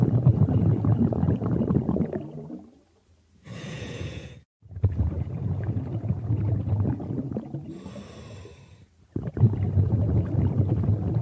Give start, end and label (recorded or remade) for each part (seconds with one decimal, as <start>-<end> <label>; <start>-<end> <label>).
0.0-3.5 recorded; 3.5-6.6 remade; 6.6-11.2 recorded